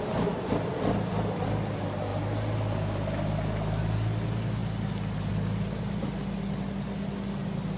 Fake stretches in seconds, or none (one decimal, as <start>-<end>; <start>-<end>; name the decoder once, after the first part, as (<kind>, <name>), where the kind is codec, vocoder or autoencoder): none